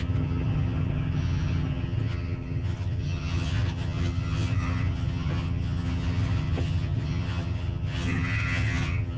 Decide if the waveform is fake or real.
fake